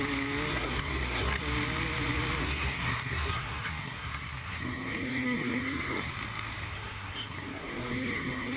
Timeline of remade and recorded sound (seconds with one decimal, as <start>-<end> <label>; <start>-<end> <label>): 0.0-0.5 recorded; 0.5-1.4 remade; 1.4-2.4 recorded; 2.4-6.1 remade; 6.1-6.7 recorded; 6.7-8.6 remade

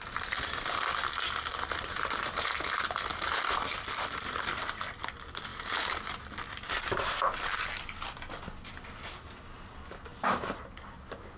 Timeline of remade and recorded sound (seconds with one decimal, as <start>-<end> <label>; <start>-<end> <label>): 0.0-3.1 recorded; 3.1-5.0 remade; 5.0-10.1 recorded; 10.1-10.6 remade; 10.6-11.4 recorded

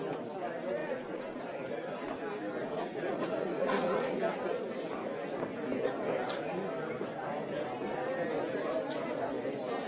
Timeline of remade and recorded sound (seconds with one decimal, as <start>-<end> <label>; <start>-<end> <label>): 0.0-0.8 recorded; 0.8-1.4 remade; 1.4-2.6 recorded; 2.6-4.2 remade; 4.2-9.9 recorded

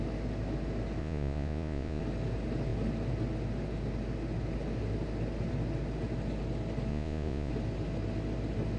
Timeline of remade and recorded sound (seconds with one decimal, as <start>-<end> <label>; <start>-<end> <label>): 0.0-1.0 recorded; 1.0-2.0 remade; 2.0-6.9 recorded; 6.9-7.5 remade; 7.5-8.8 recorded

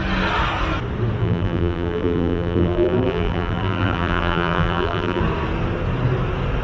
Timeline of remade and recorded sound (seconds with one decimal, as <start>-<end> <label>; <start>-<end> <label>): 0.0-1.2 recorded; 1.2-5.2 remade; 5.2-6.6 recorded